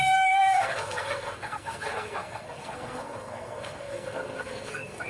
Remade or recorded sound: remade